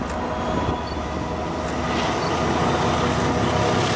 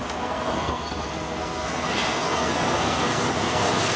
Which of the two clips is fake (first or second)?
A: second